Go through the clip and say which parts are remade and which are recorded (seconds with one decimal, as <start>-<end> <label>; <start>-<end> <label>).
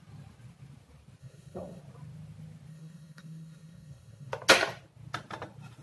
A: 0.0-1.2 recorded; 1.2-1.8 remade; 1.8-2.7 recorded; 2.7-4.3 remade; 4.3-5.8 recorded